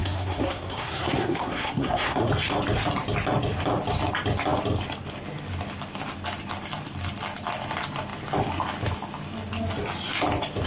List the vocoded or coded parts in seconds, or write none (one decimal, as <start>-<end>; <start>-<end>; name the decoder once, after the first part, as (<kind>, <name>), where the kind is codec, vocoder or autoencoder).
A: 0.0-2.3 (codec, SNAC)